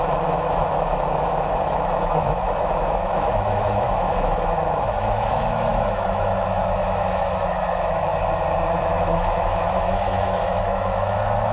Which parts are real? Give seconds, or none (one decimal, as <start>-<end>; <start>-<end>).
8.1-8.8